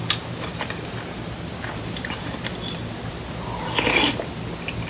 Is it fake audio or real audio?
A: real